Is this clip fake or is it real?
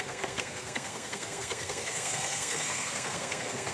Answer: fake